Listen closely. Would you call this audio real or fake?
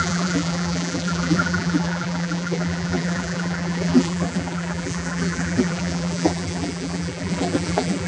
fake